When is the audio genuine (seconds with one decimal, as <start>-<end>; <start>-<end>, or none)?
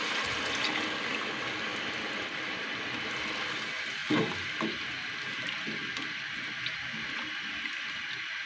0.0-8.5